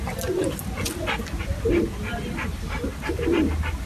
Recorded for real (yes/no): yes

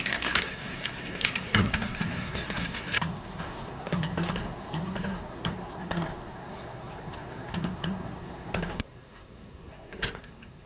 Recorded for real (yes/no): no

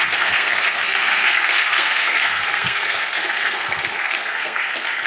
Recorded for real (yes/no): no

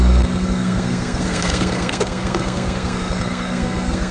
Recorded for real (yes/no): no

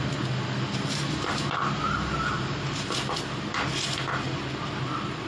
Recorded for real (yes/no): yes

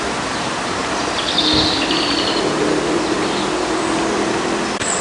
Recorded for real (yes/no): yes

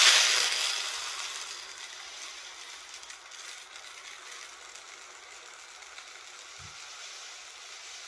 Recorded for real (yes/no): yes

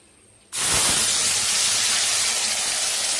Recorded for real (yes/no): yes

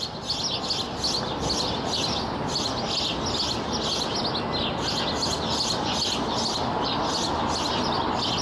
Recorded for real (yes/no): yes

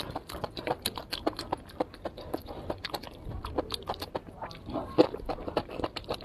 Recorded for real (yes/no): yes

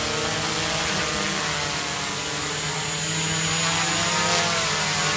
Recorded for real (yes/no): yes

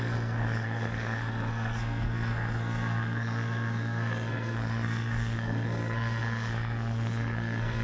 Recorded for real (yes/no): no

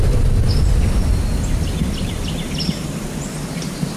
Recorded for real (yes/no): yes